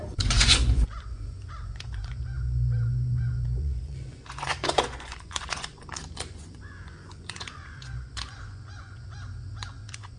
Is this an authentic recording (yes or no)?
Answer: no